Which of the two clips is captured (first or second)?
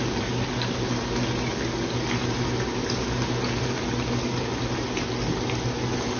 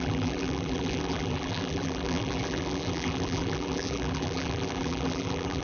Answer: first